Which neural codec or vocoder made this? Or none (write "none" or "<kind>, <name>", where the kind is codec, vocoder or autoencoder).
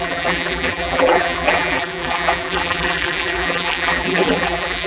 vocoder, BigVGAN v2